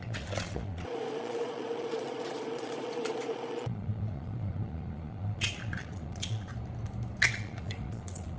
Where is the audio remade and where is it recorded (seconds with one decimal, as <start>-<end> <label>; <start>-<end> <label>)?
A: 0.0-6.5 remade; 6.5-7.3 recorded; 7.3-8.4 remade